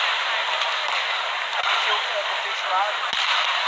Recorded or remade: recorded